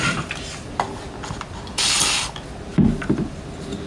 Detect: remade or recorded recorded